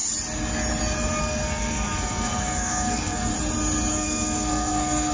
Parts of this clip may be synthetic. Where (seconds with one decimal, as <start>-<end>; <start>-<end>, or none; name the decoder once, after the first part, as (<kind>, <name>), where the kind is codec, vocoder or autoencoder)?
1.2-3.3 (codec, SNAC); 3.9-5.1